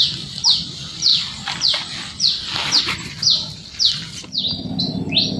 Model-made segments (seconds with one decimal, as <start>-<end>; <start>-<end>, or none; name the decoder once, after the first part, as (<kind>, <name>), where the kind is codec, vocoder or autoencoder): none